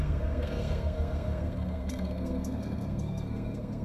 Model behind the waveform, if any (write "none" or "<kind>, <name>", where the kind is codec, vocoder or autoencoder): codec, SNAC